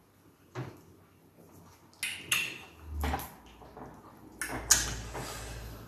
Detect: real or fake real